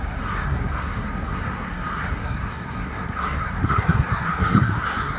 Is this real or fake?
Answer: fake